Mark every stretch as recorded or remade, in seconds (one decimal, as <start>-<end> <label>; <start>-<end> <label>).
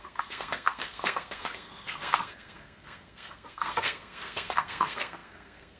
0.0-5.8 remade